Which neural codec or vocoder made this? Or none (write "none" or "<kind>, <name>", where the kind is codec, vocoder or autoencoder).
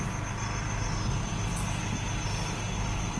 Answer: none